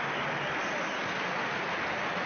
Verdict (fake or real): real